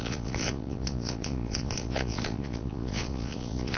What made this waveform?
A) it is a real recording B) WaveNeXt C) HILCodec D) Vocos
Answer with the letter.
D